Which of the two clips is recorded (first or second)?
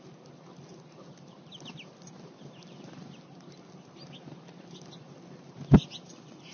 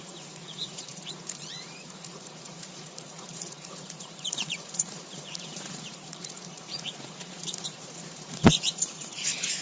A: first